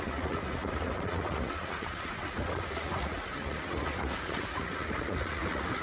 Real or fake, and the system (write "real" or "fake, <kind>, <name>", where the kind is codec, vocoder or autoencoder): fake, vocoder, Vocos